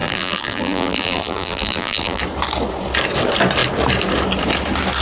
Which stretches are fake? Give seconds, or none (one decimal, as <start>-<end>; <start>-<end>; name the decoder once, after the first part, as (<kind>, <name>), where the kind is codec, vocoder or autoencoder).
0.0-2.2 (vocoder, BigVGAN v2)